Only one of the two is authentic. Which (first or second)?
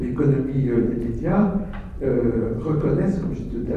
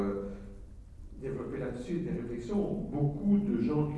second